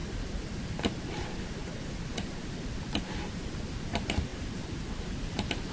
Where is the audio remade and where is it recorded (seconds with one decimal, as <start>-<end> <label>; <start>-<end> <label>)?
0.0-5.7 recorded